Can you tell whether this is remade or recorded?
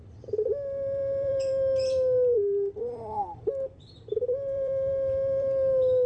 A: remade